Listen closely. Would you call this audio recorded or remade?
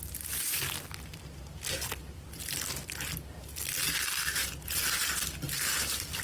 recorded